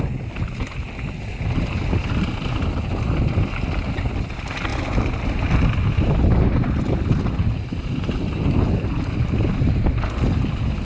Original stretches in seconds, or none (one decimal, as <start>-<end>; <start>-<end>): 0.0-10.8